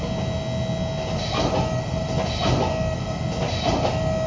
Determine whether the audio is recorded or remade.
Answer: recorded